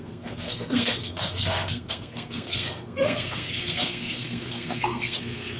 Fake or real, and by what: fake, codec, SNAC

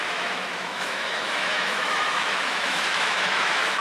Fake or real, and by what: fake, autoencoder, DAC-VAE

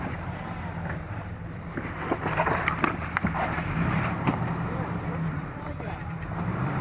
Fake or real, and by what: fake, vocoder, BigVGAN v2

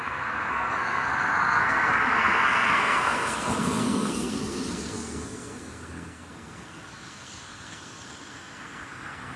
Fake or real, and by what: fake, codec, SNAC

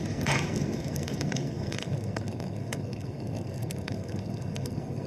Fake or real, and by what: fake, codec, SNAC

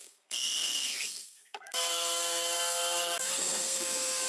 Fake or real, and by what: fake, codec, SNAC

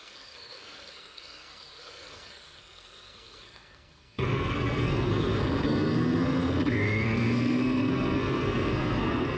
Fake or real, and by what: fake, codec, SNAC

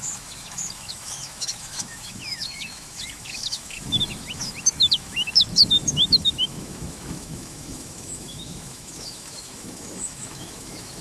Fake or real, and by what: fake, autoencoder, DAC-VAE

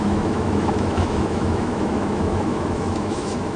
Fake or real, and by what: fake, autoencoder, DAC-VAE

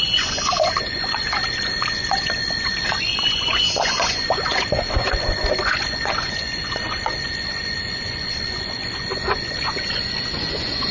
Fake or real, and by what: fake, vocoder, Vocos